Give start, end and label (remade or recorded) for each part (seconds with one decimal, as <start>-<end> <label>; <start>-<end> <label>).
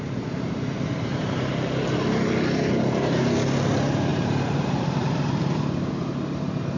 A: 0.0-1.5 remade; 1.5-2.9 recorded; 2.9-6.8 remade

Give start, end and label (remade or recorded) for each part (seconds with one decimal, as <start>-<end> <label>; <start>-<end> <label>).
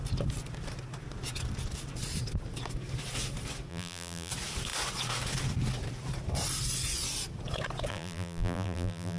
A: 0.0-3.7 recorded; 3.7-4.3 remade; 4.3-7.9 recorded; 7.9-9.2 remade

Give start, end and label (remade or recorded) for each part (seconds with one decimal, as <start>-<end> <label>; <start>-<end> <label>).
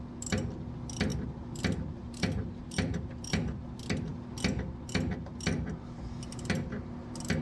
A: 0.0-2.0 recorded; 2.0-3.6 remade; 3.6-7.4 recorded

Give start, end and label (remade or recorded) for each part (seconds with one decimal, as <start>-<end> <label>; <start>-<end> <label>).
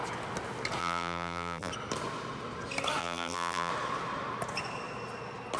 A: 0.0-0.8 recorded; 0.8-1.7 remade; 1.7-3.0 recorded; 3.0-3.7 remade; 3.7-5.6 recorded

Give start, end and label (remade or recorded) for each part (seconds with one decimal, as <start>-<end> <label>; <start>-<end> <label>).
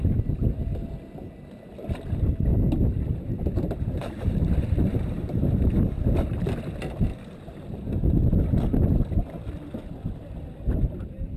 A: 0.0-2.5 recorded; 2.5-5.6 remade; 5.6-11.4 recorded